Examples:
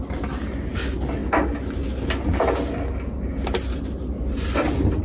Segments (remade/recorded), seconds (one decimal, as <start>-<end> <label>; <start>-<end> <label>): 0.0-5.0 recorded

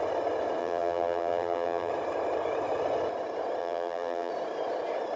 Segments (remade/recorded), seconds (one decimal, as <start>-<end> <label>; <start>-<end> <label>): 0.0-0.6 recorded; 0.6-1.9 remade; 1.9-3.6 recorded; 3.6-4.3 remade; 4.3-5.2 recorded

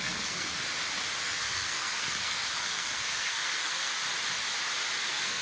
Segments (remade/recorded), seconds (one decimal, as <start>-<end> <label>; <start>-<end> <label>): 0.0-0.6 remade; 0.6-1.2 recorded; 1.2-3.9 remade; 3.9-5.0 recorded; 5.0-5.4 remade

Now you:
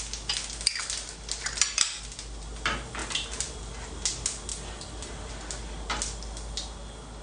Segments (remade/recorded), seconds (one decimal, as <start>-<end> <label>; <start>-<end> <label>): 0.0-3.0 recorded; 3.0-3.6 remade; 3.6-4.5 recorded; 4.5-5.3 remade; 5.3-7.2 recorded